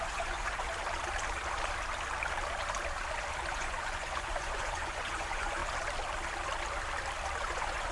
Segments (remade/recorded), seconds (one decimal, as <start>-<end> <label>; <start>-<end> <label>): 0.0-0.7 remade; 0.7-3.5 recorded; 3.5-5.6 remade; 5.6-7.4 recorded; 7.4-7.9 remade